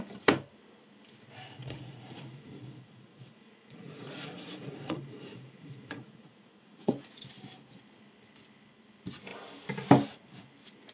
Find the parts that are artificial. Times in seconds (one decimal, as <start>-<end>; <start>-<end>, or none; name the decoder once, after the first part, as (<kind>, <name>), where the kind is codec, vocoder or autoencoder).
1.6-6.9 (vocoder, Vocos)